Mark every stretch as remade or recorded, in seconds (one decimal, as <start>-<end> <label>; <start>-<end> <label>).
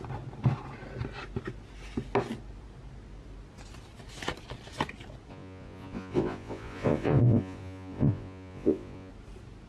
0.0-5.3 recorded; 5.3-9.1 remade; 9.1-9.7 recorded